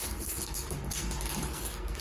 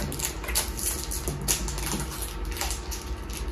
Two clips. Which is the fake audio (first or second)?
first